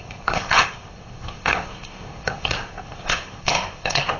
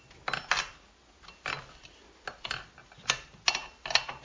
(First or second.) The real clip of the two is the second